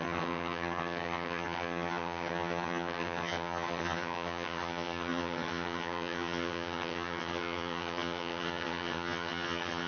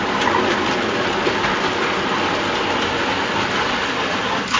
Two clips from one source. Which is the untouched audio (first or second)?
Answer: second